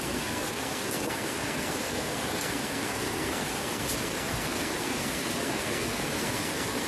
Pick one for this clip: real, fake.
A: fake